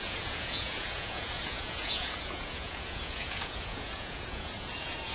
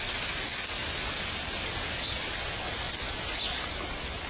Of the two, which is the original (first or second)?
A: second